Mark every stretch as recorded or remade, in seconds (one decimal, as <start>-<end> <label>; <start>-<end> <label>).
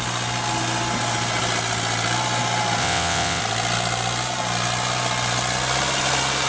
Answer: 0.0-2.8 recorded; 2.8-3.4 remade; 3.4-6.5 recorded